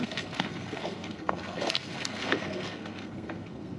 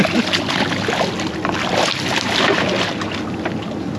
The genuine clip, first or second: second